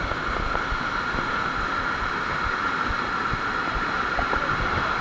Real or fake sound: real